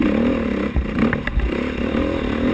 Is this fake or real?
real